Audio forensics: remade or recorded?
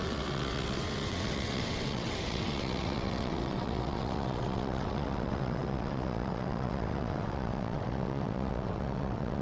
remade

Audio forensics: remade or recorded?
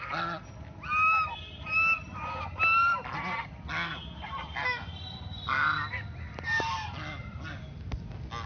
recorded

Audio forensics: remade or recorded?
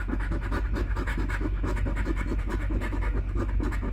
remade